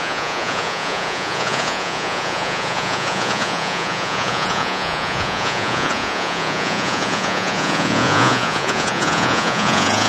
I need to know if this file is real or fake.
fake